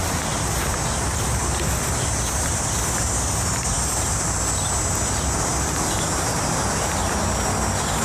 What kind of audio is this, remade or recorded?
recorded